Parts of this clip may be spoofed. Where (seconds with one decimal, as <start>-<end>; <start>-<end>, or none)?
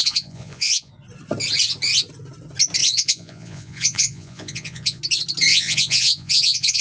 0.0-0.9; 2.8-5.0; 5.5-6.8